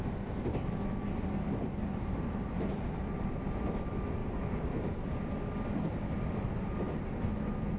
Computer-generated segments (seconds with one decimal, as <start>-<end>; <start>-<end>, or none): 1.8-3.6; 4.2-5.0